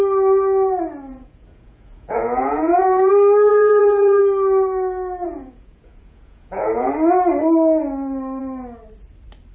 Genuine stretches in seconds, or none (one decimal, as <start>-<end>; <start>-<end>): 0.0-1.1; 3.1-3.5; 4.2-5.2; 6.9-9.5